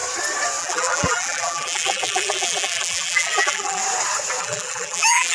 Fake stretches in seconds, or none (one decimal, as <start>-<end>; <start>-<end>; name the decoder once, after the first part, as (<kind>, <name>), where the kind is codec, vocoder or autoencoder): 0.6-3.8 (vocoder, BigVGAN v2); 4.4-5.3